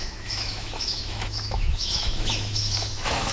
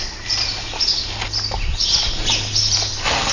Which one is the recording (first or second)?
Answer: second